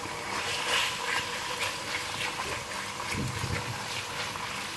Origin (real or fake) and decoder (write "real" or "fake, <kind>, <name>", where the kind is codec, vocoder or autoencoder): real